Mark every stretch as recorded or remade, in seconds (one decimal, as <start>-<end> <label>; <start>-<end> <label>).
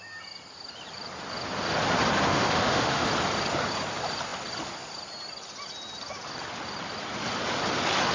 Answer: 0.0-2.3 recorded; 2.3-3.1 remade; 3.1-8.1 recorded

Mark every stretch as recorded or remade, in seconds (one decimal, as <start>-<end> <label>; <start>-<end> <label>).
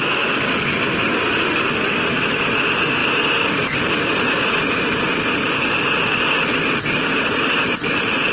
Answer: 0.0-3.0 recorded; 3.0-7.4 remade; 7.4-8.3 recorded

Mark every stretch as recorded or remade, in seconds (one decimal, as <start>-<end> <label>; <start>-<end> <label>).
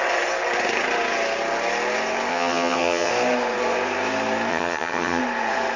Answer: 0.0-2.3 recorded; 2.3-3.1 remade; 3.1-4.5 recorded; 4.5-5.2 remade; 5.2-5.8 recorded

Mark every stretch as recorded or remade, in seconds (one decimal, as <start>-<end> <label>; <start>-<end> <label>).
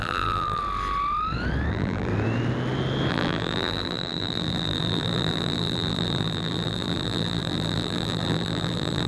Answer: 0.0-0.6 remade; 0.6-1.7 recorded; 1.7-2.1 remade; 2.1-3.1 recorded; 3.1-9.1 remade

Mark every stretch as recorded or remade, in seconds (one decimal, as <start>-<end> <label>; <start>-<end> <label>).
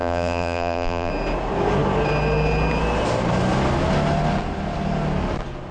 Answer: 0.0-1.1 remade; 1.1-5.7 recorded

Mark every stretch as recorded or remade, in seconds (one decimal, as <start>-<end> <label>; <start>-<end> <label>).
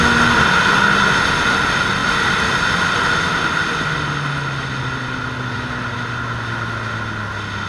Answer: 0.0-7.7 recorded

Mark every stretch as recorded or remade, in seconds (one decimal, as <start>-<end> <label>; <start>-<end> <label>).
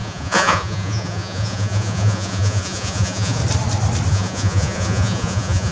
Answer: 0.0-3.4 remade; 3.4-4.1 recorded; 4.1-5.7 remade